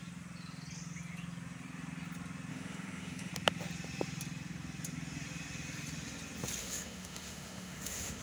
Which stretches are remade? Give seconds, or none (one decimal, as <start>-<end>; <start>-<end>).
2.5-3.3; 6.6-8.2